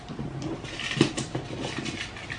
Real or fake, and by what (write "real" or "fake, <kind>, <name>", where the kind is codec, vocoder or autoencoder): real